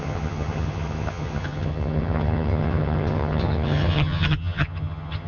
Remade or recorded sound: remade